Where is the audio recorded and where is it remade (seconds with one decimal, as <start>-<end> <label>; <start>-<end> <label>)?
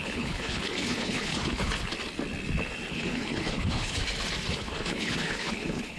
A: 0.0-1.9 remade; 1.9-2.9 recorded; 2.9-4.0 remade; 4.0-4.5 recorded; 4.5-6.0 remade